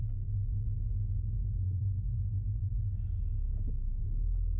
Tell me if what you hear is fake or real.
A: real